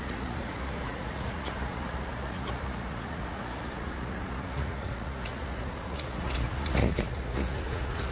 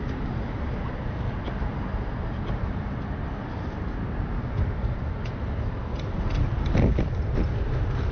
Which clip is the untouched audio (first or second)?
second